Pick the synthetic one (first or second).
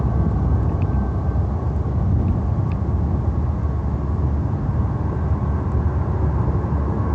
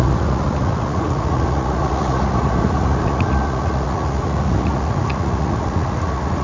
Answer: second